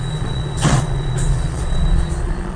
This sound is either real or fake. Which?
fake